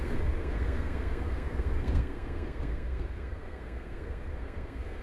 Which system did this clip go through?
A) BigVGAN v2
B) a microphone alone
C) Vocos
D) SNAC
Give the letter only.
D